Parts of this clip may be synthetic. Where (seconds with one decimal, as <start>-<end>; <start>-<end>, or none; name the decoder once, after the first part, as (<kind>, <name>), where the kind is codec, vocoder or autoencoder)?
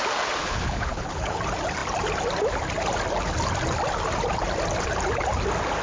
0.4-1.4 (codec, HILCodec)